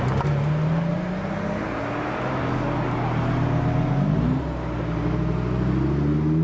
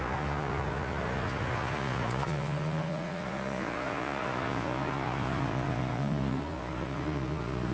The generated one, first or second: second